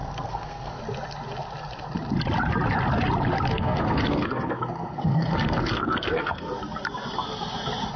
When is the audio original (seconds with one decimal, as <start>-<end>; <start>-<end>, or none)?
0.8-3.5; 6.6-8.0